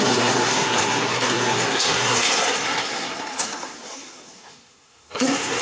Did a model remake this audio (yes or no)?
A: yes